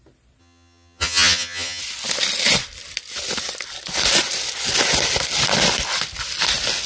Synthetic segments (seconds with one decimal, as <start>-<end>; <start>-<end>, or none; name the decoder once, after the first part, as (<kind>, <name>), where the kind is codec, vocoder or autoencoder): 0.4-1.8 (vocoder, HiFi-GAN)